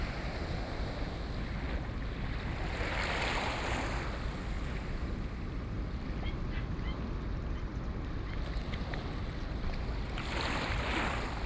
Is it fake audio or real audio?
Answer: real